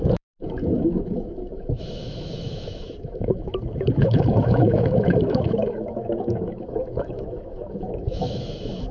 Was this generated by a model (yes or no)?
yes